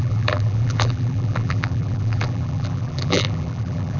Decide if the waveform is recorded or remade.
remade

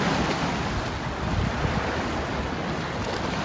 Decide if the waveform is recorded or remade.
recorded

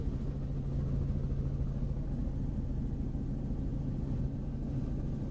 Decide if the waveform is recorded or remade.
recorded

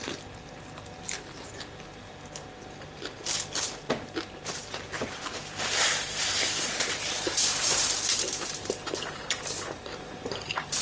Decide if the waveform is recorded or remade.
remade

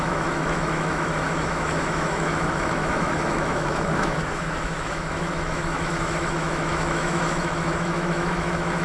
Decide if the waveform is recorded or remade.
remade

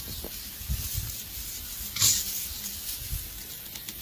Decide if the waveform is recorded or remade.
recorded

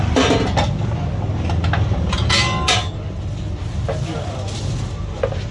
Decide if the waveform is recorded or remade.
recorded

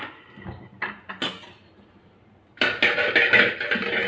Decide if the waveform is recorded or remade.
recorded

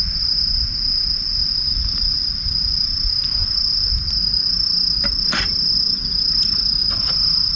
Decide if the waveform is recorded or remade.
recorded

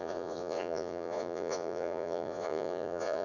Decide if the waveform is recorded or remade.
remade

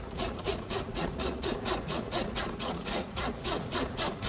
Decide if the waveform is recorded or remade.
remade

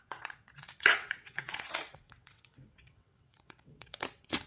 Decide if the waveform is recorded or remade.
remade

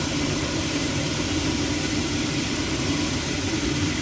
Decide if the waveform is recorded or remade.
remade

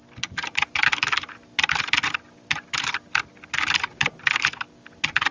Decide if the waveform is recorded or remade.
recorded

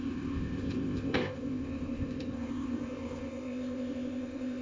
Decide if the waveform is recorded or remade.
remade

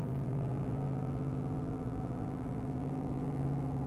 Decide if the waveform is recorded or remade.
remade